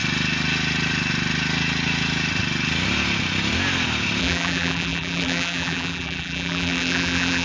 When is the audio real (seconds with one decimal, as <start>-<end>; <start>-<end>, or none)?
0.0-4.2